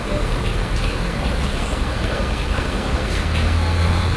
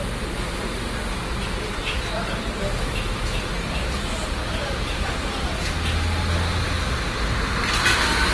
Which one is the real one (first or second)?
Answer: second